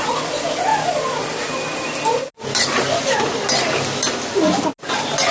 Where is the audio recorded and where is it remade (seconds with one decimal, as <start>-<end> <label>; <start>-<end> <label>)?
0.0-5.3 recorded